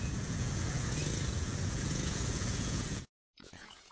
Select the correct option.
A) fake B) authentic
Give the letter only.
A